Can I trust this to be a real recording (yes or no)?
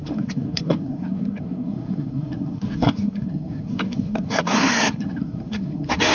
no